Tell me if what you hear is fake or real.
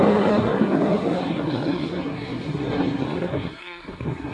fake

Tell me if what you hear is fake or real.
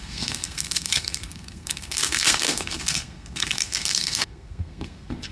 fake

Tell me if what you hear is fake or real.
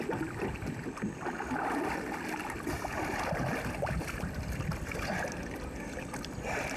real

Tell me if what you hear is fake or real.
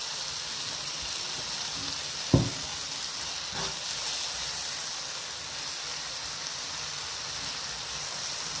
real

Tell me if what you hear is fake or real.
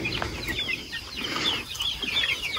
real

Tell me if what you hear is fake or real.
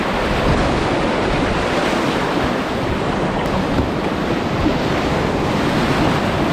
fake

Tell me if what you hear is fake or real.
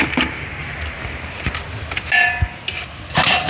real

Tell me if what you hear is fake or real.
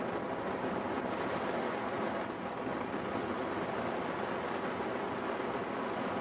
real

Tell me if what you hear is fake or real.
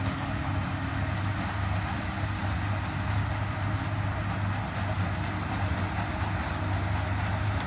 real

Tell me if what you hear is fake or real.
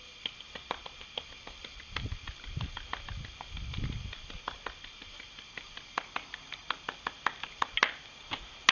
real